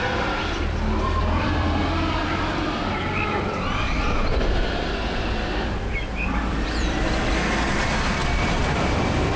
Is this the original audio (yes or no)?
no